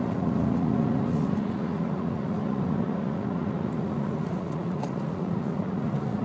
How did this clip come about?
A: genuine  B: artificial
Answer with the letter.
B